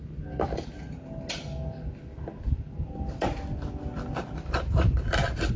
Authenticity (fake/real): real